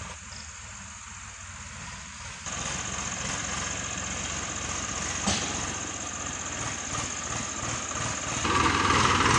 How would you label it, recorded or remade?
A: recorded